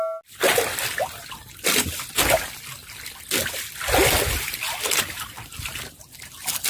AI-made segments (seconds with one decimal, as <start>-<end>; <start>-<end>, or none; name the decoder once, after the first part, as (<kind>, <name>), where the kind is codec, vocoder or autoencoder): none